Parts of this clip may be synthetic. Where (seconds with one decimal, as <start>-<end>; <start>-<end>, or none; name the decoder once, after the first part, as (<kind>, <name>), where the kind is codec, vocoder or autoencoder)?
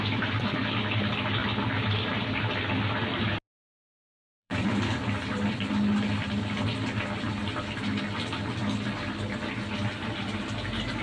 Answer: 4.1-5.7 (vocoder, BigVGAN v2)